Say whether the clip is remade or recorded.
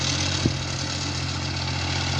recorded